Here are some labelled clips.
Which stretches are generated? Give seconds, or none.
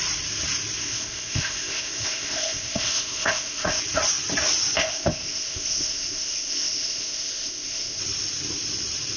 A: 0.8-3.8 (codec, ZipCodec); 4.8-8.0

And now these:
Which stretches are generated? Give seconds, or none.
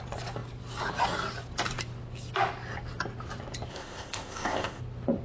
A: 3.7-4.8 (codec, ZipCodec)